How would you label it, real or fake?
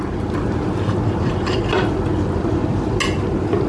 real